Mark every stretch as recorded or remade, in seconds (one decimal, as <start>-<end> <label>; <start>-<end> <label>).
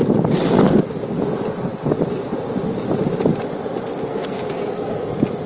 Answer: 0.0-4.1 recorded; 4.1-5.1 remade; 5.1-5.5 recorded